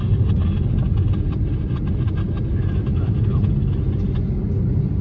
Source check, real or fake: real